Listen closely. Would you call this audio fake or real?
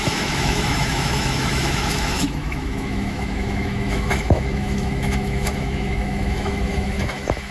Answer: fake